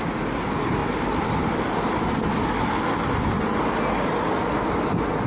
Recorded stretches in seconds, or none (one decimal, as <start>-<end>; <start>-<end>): 0.0-0.8; 3.6-5.3